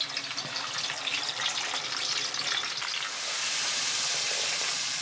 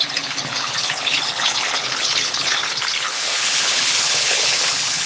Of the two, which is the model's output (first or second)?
second